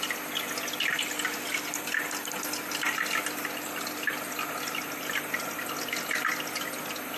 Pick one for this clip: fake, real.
real